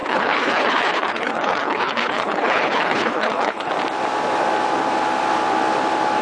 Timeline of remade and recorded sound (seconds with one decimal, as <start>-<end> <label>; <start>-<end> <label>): 0.0-3.7 remade; 3.7-6.2 recorded